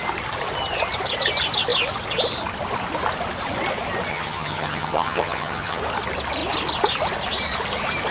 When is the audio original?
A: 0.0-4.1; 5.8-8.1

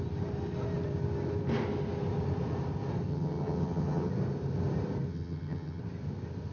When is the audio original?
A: 0.0-3.1; 4.1-5.1; 5.8-6.5

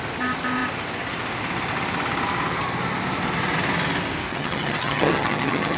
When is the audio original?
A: 0.0-4.3